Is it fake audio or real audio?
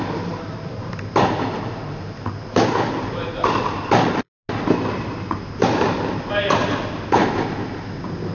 real